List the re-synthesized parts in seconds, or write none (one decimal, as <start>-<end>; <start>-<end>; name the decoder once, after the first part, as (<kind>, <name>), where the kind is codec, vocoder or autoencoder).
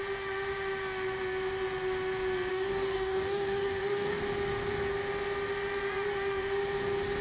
2.5-4.2 (codec, DAC)